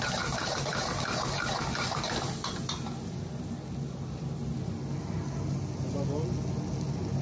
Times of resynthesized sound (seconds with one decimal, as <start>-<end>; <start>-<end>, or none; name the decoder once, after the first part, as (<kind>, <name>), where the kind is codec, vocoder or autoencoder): none